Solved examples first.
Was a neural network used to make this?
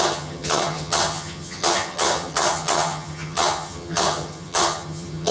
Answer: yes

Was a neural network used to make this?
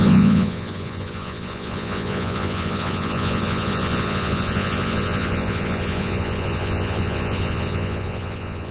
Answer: yes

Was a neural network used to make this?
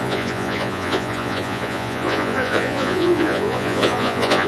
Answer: yes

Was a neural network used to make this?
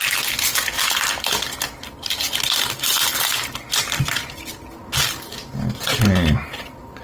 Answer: no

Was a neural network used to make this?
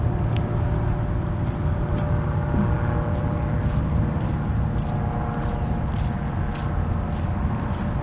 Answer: no